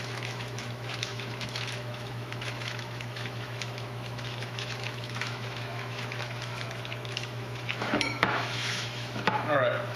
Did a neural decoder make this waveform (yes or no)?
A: yes